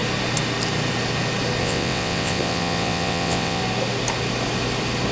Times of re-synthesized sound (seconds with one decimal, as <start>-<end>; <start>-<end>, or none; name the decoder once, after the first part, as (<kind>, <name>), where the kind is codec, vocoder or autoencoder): 1.6-3.6 (vocoder, WaveNeXt)